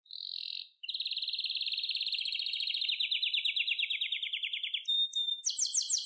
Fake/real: real